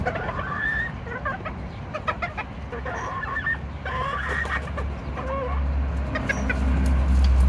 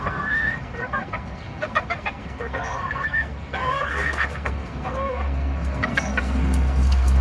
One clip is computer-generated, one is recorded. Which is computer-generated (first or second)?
second